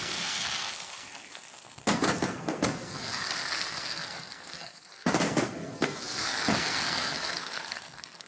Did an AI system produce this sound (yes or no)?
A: yes